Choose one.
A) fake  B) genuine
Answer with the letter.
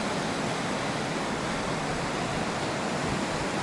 B